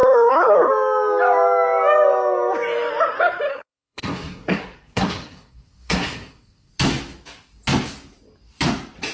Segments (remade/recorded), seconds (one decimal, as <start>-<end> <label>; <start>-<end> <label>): 0.0-0.7 remade; 0.7-3.5 recorded; 3.5-6.7 remade; 6.7-9.1 recorded